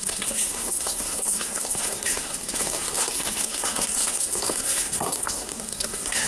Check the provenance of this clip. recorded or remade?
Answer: remade